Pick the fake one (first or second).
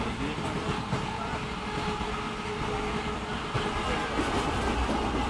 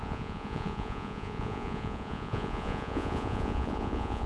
second